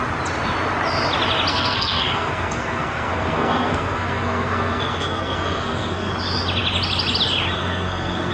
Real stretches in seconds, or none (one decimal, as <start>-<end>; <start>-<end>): 0.0-1.5; 6.1-7.6